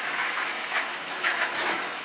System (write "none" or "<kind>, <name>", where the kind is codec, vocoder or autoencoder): autoencoder, DAC-VAE